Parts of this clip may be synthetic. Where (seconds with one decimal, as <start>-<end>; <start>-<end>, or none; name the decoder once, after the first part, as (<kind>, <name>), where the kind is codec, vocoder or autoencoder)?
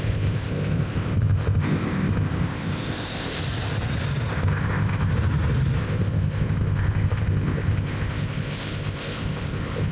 0.0-3.4 (codec, ZipCodec); 4.3-5.1; 5.8-9.9